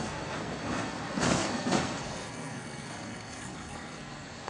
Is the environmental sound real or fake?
fake